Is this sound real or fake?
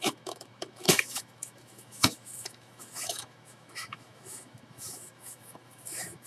fake